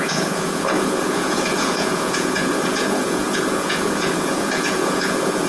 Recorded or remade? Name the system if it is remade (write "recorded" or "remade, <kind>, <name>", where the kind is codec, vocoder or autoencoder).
remade, vocoder, Vocos